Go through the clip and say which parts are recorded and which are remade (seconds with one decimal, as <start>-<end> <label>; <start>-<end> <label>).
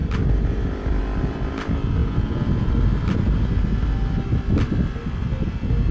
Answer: 0.0-2.0 recorded; 2.0-2.7 remade; 2.7-5.9 recorded